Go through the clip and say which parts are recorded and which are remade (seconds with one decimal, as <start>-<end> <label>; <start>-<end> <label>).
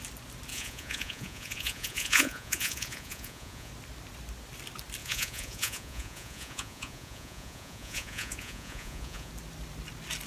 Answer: 0.0-0.5 recorded; 0.5-3.7 remade; 3.7-5.0 recorded; 5.0-9.3 remade; 9.3-10.3 recorded